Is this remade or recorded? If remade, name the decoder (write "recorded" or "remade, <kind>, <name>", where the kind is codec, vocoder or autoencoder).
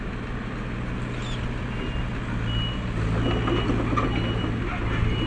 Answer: recorded